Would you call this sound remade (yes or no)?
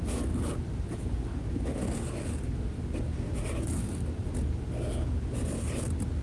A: no